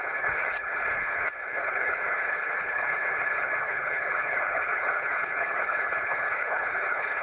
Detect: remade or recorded remade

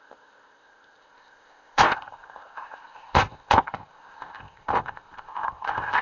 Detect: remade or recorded remade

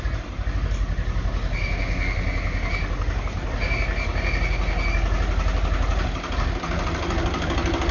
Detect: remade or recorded recorded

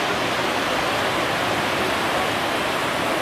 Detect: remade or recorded recorded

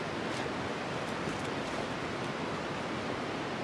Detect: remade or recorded recorded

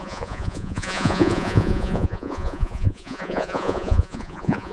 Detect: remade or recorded remade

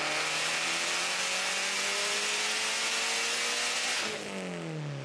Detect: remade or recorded recorded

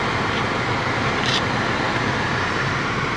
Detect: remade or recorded remade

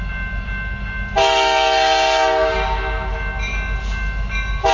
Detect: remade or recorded recorded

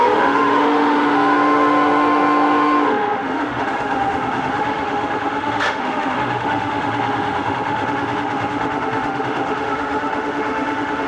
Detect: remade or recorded remade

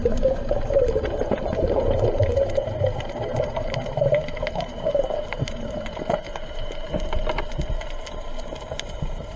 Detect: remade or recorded remade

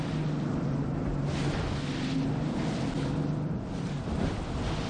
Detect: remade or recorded recorded